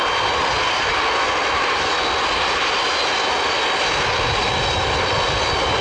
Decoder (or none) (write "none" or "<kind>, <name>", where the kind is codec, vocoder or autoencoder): none